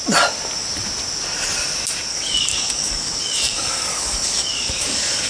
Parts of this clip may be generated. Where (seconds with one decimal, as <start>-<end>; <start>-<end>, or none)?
2.1-5.3